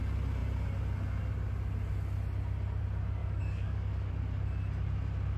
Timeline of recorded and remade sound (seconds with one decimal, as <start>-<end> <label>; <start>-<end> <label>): 0.0-3.2 recorded; 3.2-4.1 remade; 4.1-5.4 recorded